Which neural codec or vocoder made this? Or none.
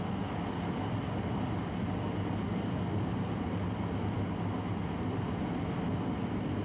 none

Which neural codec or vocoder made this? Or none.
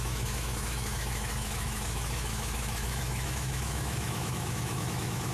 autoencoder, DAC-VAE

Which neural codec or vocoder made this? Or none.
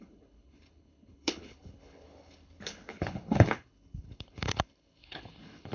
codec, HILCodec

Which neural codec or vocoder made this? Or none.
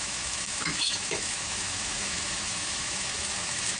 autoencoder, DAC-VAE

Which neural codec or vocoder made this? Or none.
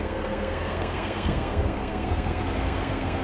codec, SNAC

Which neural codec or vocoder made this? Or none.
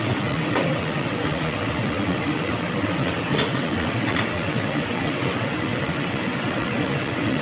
vocoder, WaveNeXt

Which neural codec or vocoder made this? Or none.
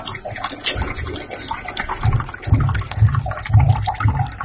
none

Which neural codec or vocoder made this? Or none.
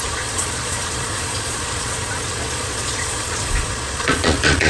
vocoder, Vocos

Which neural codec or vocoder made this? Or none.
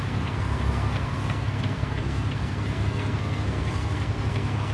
codec, SNAC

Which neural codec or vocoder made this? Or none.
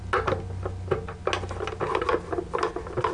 none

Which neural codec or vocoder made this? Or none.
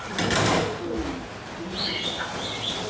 none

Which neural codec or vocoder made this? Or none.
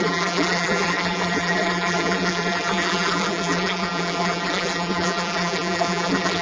vocoder, BigVGAN v2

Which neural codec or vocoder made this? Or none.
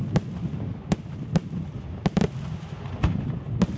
none